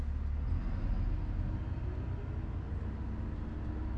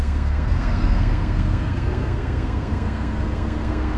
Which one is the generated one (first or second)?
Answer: second